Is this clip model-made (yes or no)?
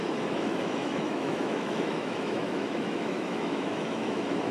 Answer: yes